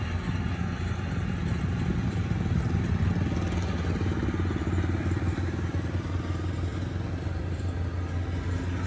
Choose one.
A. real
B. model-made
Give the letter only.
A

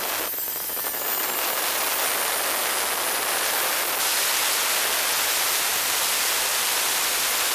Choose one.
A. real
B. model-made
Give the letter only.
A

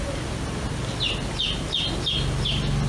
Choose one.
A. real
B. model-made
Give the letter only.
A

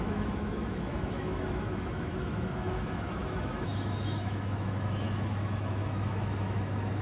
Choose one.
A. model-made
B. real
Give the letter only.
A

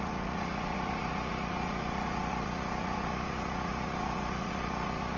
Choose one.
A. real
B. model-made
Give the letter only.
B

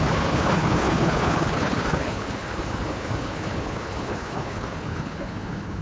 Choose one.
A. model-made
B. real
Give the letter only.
A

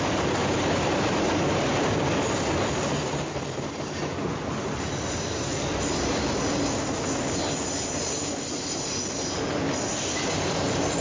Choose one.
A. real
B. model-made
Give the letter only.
A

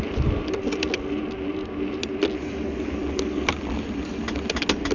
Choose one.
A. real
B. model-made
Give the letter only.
A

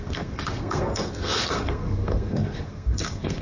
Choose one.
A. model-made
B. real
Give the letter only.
A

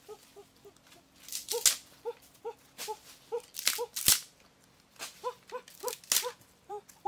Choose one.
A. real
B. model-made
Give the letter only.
A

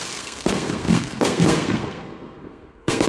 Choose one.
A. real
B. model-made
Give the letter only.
B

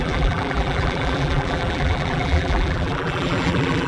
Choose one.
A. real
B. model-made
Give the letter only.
B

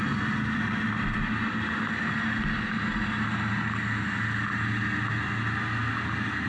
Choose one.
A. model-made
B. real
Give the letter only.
B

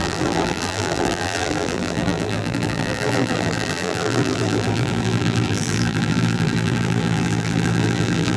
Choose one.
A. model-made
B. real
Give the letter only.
A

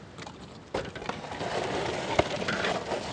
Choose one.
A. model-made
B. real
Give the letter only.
B